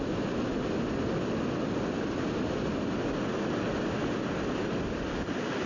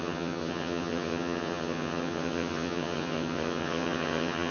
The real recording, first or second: first